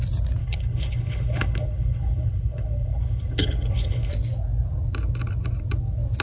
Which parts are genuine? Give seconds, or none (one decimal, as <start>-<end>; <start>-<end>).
0.0-0.4; 4.1-6.2